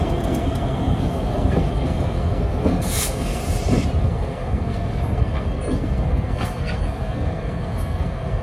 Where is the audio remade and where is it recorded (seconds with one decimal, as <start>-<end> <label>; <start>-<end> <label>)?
0.0-3.4 remade; 3.4-4.0 recorded; 4.0-8.4 remade

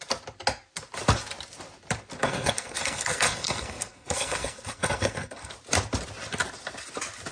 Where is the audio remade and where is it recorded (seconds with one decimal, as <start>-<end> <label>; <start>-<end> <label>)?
0.0-2.2 recorded; 2.2-5.5 remade; 5.5-7.3 recorded

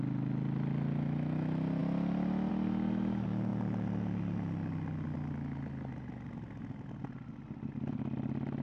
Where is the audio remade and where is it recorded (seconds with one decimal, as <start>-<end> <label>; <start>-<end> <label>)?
0.0-8.6 recorded

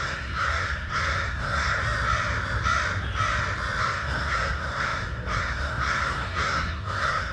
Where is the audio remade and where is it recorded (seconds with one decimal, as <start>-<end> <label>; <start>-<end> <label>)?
0.0-1.8 remade; 1.8-3.8 recorded; 3.8-7.3 remade